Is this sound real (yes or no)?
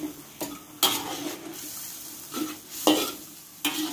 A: yes